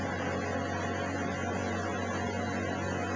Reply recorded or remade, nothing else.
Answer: recorded